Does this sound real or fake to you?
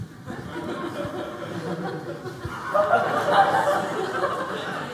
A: real